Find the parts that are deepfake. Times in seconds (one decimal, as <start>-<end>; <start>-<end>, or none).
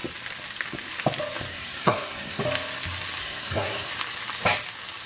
1.5-2.4; 3.2-3.9